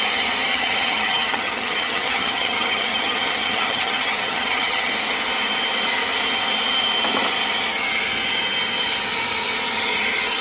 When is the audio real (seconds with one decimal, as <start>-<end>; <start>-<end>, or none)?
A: 0.0-0.5; 4.9-10.4